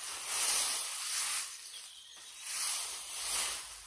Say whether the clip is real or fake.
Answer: real